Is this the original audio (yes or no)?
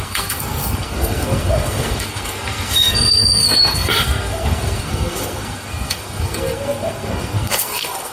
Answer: no